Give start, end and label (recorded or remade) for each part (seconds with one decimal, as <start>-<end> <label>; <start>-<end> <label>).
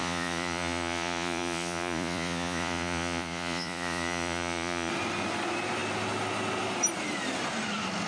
0.0-4.9 remade; 4.9-8.1 recorded